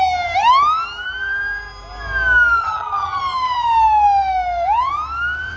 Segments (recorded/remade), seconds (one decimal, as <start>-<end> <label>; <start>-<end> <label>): 0.0-2.6 recorded; 2.6-3.2 remade; 3.2-5.6 recorded